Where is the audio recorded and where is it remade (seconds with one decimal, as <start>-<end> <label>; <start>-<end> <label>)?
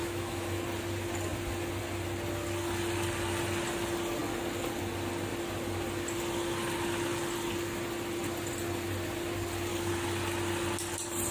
0.0-0.6 remade; 0.6-11.3 recorded